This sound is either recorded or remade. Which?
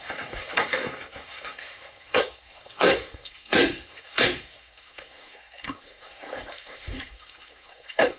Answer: remade